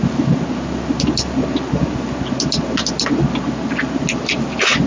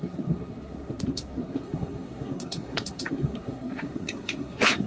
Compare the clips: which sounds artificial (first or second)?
second